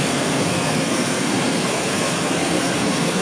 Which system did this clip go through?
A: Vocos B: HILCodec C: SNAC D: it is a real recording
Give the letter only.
C